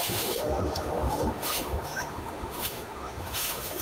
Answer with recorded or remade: remade